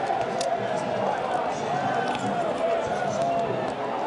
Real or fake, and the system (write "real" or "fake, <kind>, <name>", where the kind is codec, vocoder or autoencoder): real